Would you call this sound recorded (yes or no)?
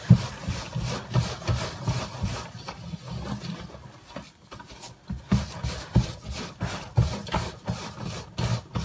yes